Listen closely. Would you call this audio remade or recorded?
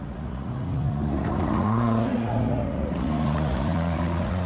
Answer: remade